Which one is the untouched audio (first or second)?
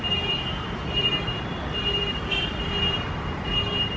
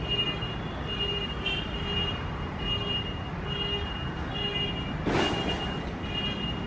second